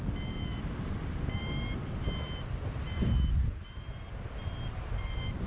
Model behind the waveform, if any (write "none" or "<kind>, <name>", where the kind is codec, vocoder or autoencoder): none